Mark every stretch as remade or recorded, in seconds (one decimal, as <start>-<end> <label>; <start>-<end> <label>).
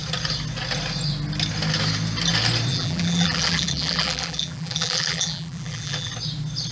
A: 0.0-2.7 recorded; 2.7-6.1 remade; 6.1-6.7 recorded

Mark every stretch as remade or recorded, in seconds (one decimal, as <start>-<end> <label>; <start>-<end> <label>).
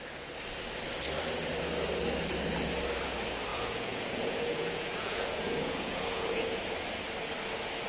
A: 0.0-3.5 recorded; 3.5-6.6 remade; 6.6-7.9 recorded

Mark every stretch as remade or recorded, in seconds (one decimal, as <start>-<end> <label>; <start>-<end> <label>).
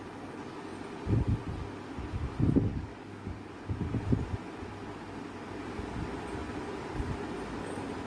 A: 0.0-2.7 recorded; 2.7-3.5 remade; 3.5-8.1 recorded